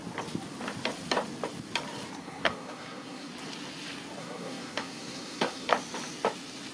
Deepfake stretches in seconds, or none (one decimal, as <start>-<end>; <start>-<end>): 2.2-3.3; 4.2-5.7